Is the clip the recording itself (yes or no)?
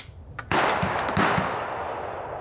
yes